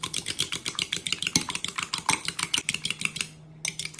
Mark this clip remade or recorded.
recorded